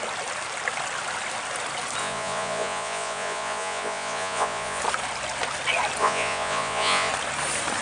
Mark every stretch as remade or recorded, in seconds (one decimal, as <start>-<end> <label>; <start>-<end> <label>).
0.0-2.0 recorded; 2.0-4.8 remade; 4.8-6.0 recorded; 6.0-7.1 remade; 7.1-7.8 recorded